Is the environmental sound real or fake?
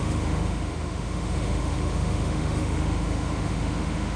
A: fake